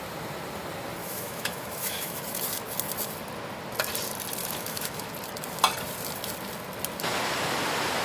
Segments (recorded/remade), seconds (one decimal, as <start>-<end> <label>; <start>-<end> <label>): 0.0-1.0 recorded; 1.0-2.2 remade; 2.2-4.4 recorded; 4.4-5.1 remade; 5.1-8.0 recorded